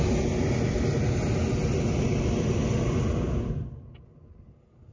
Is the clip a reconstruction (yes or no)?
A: no